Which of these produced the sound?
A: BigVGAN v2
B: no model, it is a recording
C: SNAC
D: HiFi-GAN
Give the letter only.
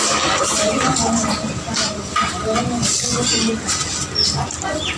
B